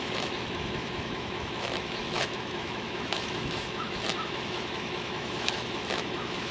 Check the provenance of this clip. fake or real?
fake